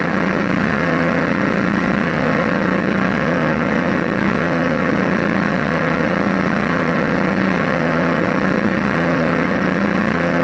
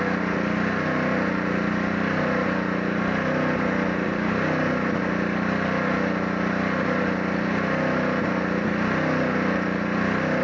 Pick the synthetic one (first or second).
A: first